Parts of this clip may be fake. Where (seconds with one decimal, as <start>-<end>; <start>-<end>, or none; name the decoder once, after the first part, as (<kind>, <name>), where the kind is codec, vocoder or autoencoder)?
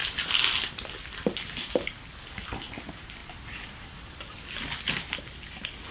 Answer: none